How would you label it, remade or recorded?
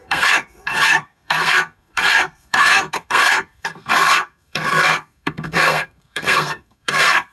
remade